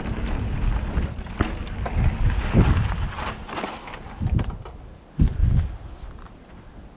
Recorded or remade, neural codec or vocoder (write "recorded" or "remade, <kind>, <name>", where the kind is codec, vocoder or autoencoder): recorded